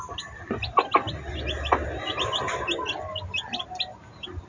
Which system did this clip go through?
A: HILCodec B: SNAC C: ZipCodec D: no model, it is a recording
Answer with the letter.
D